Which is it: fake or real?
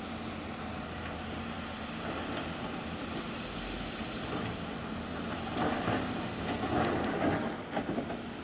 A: real